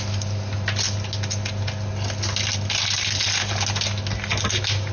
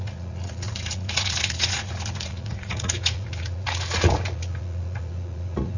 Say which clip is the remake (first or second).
second